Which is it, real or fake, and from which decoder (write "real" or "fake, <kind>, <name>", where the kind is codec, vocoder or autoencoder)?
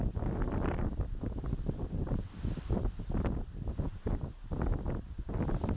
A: fake, vocoder, BigVGAN v2